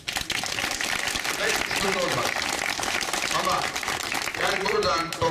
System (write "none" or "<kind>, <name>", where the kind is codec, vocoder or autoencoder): vocoder, BigVGAN v2